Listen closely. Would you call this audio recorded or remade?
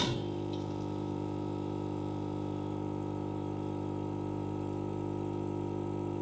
remade